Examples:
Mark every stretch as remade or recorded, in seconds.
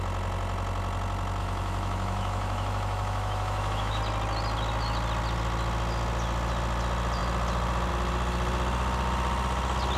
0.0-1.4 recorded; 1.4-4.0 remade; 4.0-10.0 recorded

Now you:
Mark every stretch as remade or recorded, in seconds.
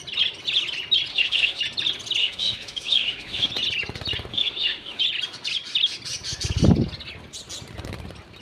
0.0-1.1 recorded; 1.1-1.6 remade; 1.6-2.2 recorded; 2.2-3.5 remade; 3.5-4.3 recorded; 4.3-5.0 remade; 5.0-8.4 recorded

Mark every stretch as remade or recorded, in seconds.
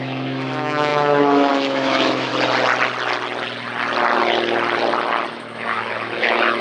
0.0-2.3 remade; 2.3-5.3 recorded; 5.3-6.6 remade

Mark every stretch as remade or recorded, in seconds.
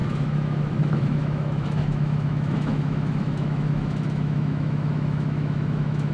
0.0-6.1 remade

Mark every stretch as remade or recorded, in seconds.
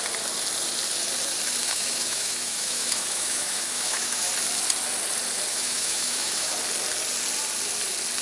0.0-1.6 recorded; 1.6-4.3 remade; 4.3-5.5 recorded; 5.5-6.5 remade; 6.5-8.2 recorded